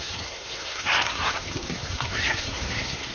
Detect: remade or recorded remade